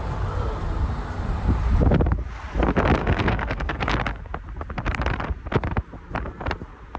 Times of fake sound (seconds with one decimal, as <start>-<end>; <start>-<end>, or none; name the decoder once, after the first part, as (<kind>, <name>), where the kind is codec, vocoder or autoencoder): 3.0-3.9 (codec, SNAC)